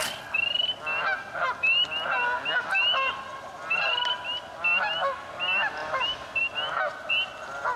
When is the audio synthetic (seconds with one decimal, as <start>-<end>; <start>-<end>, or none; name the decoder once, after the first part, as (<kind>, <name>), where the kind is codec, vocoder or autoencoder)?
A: none